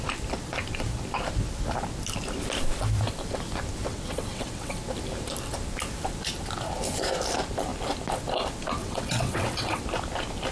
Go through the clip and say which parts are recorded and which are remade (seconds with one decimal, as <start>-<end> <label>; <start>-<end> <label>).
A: 0.0-3.9 recorded; 3.9-4.8 remade; 4.8-8.8 recorded; 8.8-9.8 remade; 9.8-10.5 recorded